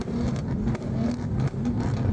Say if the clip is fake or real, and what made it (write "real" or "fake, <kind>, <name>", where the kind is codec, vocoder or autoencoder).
real